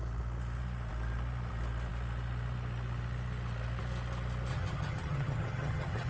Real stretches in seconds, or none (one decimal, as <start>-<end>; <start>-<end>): 0.0-4.5